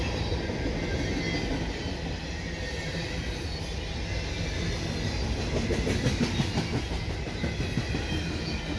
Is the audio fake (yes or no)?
no